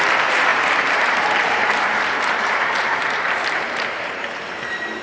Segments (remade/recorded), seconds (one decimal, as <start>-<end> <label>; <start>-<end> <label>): 0.0-5.0 remade